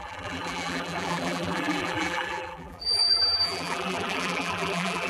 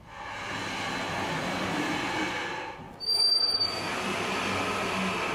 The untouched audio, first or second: second